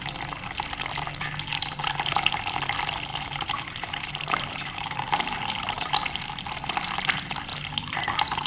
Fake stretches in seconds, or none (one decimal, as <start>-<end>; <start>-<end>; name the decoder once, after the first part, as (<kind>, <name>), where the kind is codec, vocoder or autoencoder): 3.1-5.9 (vocoder, BigVGAN v2); 7.5-8.5